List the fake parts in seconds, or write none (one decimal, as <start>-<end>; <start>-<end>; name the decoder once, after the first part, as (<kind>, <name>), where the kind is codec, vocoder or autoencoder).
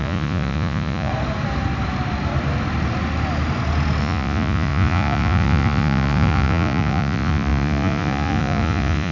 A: 0.0-1.1 (vocoder, Vocos); 4.0-9.1